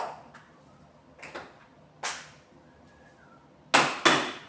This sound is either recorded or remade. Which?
recorded